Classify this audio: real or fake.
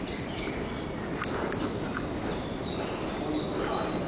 real